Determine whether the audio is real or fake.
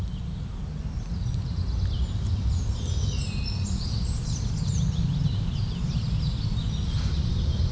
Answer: real